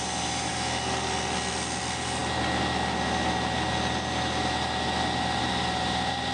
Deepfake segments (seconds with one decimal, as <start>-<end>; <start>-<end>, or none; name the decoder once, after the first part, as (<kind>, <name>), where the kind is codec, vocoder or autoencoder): none

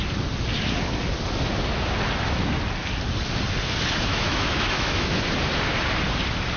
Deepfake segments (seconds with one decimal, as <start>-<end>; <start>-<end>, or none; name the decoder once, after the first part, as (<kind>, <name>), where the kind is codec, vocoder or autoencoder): 4.1-5.2 (autoencoder, DAC-VAE)

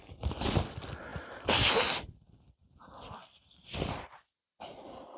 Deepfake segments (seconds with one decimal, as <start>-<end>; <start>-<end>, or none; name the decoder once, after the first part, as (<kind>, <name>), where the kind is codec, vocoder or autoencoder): none

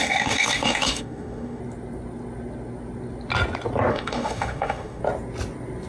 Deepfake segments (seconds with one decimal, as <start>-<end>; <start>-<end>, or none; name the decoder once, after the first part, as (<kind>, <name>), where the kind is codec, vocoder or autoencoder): 0.0-1.6 (autoencoder, DAC-VAE); 3.9-5.0

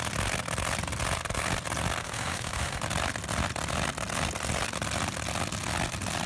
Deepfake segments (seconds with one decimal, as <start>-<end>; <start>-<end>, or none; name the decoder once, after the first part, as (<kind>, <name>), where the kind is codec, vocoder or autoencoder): 2.0-2.8 (autoencoder, DAC-VAE)